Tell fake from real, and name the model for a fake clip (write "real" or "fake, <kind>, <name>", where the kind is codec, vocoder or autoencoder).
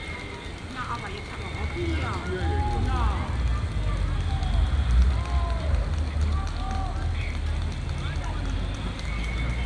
real